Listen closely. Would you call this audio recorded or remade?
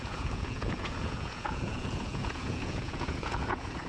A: remade